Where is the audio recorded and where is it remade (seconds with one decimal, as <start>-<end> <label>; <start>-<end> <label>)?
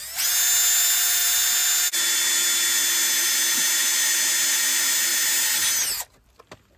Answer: 0.0-6.8 recorded